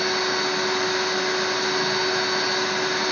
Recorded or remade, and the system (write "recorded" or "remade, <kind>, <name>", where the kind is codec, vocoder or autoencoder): recorded